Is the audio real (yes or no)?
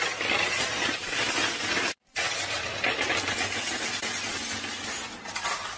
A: yes